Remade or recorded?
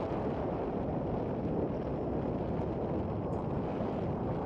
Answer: recorded